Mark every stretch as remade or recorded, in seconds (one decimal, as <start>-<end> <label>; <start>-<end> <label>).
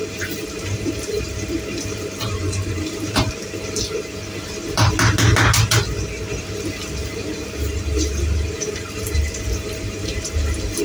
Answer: 0.0-3.3 remade; 3.3-7.0 recorded; 7.0-10.8 remade